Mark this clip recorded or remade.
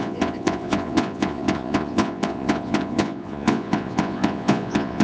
remade